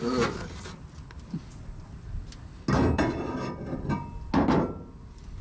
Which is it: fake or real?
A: real